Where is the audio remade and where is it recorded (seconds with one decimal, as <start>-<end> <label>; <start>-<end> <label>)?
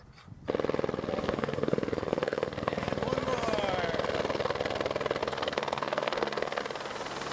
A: 0.0-1.2 recorded; 1.2-2.9 remade; 2.9-5.2 recorded; 5.2-6.6 remade; 6.6-7.3 recorded